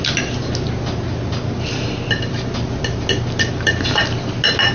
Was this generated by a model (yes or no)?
no